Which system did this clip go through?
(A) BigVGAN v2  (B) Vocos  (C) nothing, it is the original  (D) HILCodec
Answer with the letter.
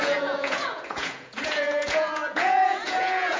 B